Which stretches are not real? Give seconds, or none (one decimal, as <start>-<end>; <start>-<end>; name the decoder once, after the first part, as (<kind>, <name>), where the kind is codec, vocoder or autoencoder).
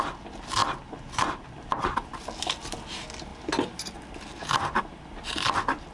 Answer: none